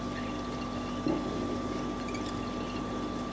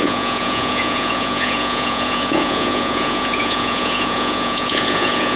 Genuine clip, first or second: first